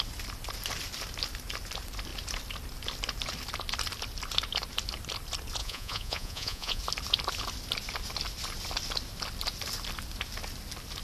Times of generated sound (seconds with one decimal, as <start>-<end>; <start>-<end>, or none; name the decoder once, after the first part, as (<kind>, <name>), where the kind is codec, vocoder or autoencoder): 5.6-6.8 (vocoder, Vocos)